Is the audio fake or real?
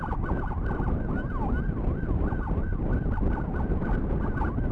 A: real